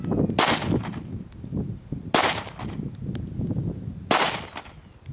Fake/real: real